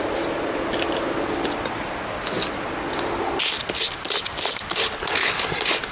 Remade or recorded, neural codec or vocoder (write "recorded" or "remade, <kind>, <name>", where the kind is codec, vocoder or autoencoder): recorded